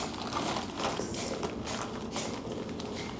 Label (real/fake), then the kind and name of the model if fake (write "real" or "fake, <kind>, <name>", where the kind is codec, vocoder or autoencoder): real